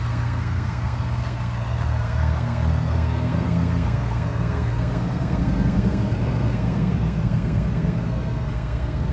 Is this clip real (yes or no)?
no